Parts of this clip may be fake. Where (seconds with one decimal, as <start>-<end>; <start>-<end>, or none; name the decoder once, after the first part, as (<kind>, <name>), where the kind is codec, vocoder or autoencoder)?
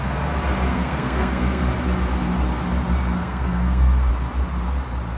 0.7-1.6 (codec, SNAC); 3.2-4.1